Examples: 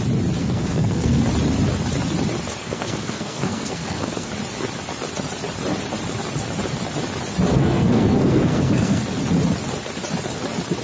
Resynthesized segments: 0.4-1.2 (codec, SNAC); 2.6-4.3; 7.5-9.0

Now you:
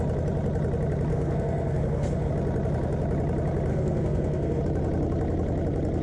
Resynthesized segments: 1.1-2.3 (codec, SNAC); 3.7-4.6

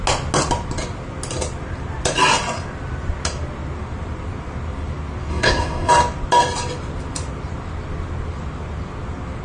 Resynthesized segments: 5.3-5.9 (codec, SNAC)

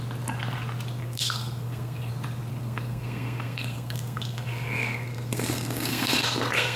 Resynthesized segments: 1.0-2.1 (codec, SNAC); 2.5-6.8

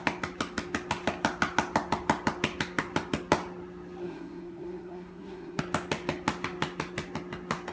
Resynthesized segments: 4.0-5.6 (codec, SNAC)

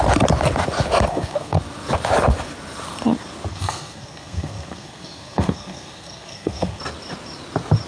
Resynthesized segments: 1.1-1.6 (codec, SNAC); 3.5-6.8